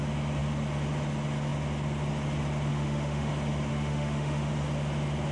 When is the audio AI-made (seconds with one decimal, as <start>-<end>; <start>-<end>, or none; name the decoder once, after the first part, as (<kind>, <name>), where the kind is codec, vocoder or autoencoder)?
2.7-3.3 (autoencoder, DAC-VAE); 3.7-4.5